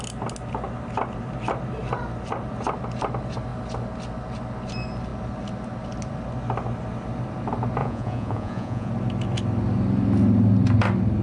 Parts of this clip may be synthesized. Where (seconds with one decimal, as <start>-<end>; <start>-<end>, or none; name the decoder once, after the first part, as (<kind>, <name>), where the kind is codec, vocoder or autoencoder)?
7.8-8.9 (vocoder, Vocos)